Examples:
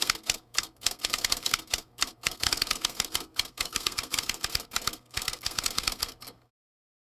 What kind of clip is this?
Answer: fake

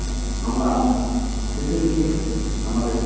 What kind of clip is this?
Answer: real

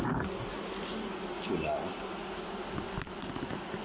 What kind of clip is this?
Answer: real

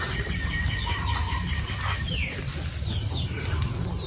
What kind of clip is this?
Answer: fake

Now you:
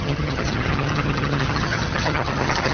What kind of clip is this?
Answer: fake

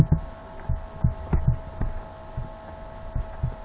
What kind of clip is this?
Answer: real